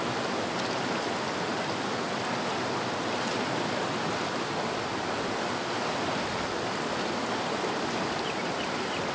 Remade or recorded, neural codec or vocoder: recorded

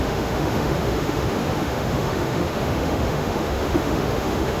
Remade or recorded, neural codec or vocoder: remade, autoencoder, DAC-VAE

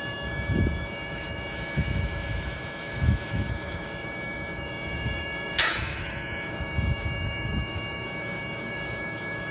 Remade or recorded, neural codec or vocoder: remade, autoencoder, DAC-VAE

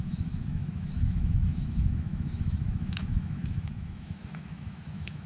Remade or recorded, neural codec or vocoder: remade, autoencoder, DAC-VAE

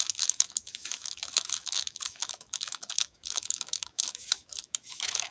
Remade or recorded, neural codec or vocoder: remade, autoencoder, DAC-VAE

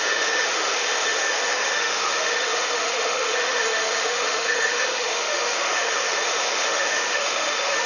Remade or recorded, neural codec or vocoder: remade, autoencoder, DAC-VAE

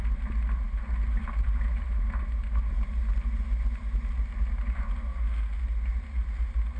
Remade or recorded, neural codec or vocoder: recorded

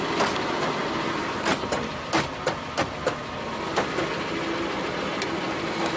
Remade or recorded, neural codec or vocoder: recorded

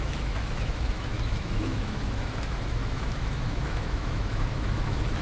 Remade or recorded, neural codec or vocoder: remade, autoencoder, DAC-VAE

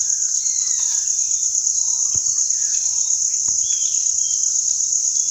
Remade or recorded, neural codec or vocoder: recorded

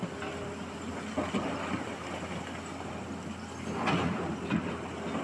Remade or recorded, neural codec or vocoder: recorded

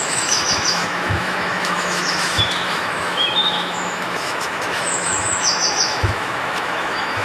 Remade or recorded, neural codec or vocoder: remade, autoencoder, DAC-VAE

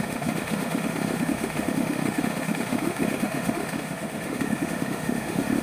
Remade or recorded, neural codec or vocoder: remade, autoencoder, DAC-VAE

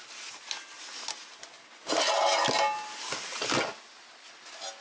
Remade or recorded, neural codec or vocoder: recorded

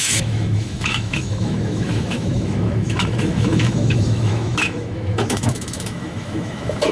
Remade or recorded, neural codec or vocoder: remade, autoencoder, DAC-VAE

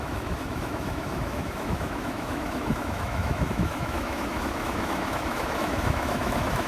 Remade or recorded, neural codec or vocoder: remade, autoencoder, DAC-VAE